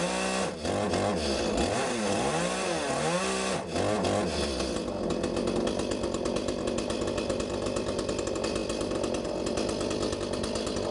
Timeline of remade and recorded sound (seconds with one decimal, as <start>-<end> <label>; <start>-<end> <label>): 0.0-10.9 recorded